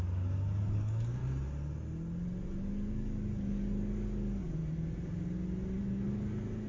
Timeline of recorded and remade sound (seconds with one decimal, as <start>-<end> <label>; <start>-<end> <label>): 0.0-1.2 remade; 1.2-2.9 recorded; 2.9-4.6 remade; 4.6-5.8 recorded; 5.8-6.7 remade